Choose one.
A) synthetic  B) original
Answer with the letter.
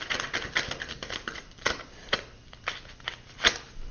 B